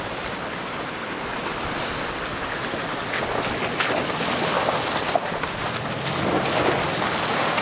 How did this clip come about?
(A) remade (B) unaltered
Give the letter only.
B